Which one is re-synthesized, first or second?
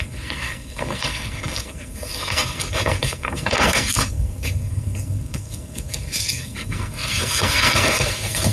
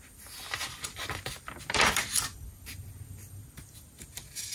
first